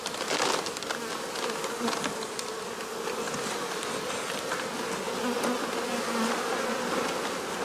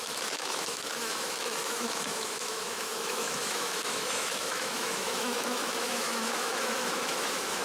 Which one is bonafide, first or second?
first